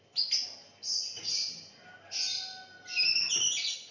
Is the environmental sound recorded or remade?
recorded